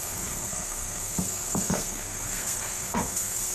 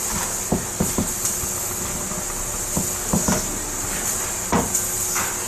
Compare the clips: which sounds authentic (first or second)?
second